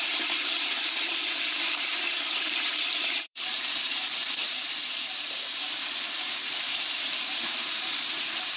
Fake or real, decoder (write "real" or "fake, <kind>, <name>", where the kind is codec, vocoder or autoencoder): fake, vocoder, BigVGAN v2